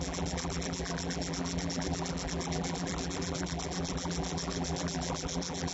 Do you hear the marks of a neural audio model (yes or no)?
yes